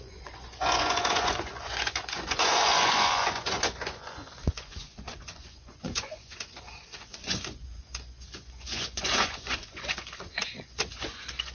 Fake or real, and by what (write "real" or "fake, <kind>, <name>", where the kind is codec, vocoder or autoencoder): fake, vocoder, Vocos